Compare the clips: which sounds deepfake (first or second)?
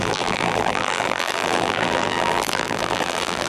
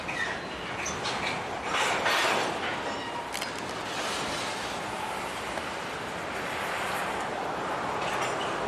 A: first